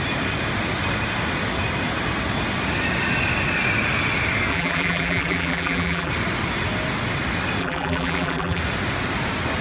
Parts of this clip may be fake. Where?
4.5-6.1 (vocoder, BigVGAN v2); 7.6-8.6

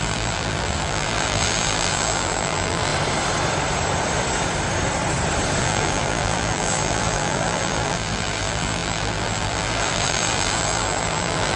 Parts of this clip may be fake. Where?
0.0-2.9 (vocoder, BigVGAN v2); 5.6-11.6